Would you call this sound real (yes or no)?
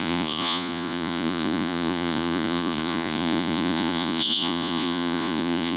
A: no